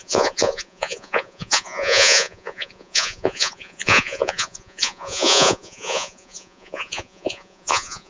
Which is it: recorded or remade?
remade